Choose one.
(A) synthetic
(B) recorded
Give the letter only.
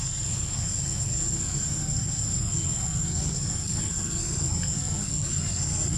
A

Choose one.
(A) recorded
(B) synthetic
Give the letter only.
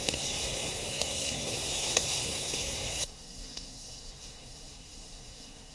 B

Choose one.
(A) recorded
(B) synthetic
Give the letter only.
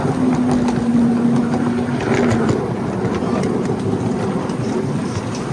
A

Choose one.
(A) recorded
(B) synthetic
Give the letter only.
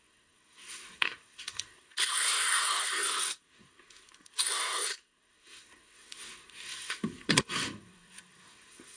B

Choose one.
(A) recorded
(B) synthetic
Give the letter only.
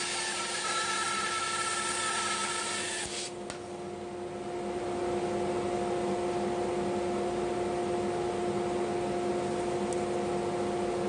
A